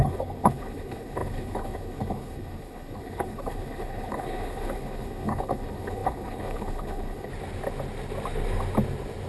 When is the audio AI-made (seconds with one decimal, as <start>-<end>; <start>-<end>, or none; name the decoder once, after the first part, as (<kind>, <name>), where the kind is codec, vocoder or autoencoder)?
0.0-7.3 (codec, HILCodec)